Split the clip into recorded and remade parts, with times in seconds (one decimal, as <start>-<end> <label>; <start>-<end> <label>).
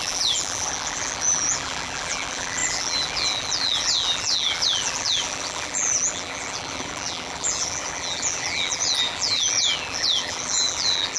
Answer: 0.0-11.2 remade